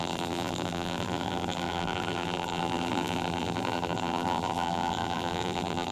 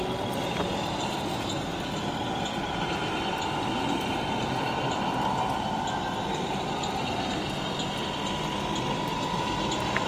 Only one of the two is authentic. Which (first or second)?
second